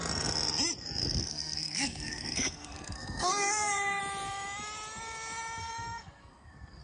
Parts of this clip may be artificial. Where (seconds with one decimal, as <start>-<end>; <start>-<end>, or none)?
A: 1.0-4.0; 5.6-6.8

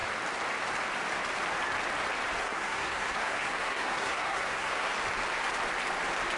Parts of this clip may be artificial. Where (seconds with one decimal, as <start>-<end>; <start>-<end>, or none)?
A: 2.4-4.9

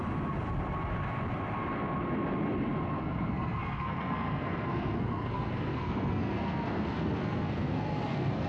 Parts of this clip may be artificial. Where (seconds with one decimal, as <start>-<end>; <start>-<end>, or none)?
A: 3.0-8.5